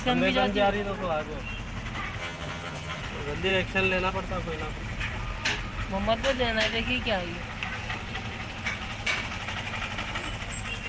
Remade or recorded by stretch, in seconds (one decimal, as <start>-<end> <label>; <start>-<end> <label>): 0.0-2.2 recorded; 2.2-3.0 remade; 3.0-10.9 recorded